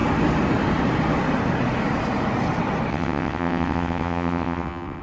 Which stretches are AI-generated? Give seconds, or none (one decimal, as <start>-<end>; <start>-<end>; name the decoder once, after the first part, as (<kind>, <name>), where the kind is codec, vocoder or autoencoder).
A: 2.9-5.0 (vocoder, WaveNeXt)